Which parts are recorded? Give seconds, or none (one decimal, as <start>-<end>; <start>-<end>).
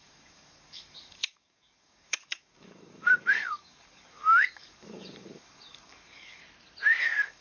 6.4-7.0